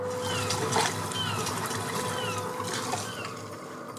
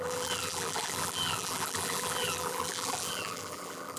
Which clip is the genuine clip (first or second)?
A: first